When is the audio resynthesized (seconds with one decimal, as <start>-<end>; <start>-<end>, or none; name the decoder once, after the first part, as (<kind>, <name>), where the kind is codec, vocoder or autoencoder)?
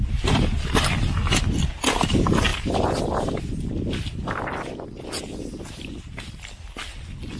none